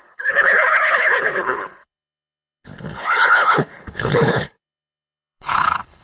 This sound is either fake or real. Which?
fake